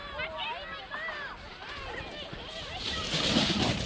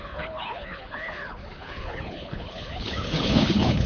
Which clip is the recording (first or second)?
first